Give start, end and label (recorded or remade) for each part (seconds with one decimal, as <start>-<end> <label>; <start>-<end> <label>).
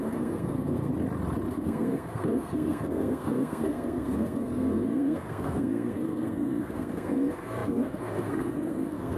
0.0-0.9 remade; 0.9-1.5 recorded; 1.5-9.2 remade